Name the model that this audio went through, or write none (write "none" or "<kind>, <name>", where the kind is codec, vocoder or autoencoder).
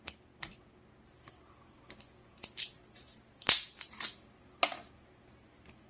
none